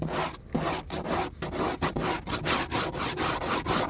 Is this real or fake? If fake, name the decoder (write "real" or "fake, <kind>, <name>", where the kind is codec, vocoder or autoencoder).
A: real